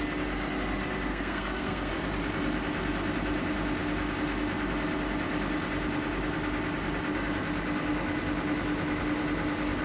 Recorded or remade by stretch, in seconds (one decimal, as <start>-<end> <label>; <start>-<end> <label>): 0.0-1.1 recorded; 1.1-1.9 remade; 1.9-9.8 recorded